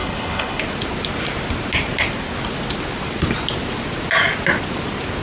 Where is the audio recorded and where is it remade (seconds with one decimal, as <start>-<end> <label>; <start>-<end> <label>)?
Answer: 0.0-0.6 remade; 0.6-5.2 recorded